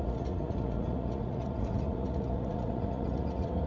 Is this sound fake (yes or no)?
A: yes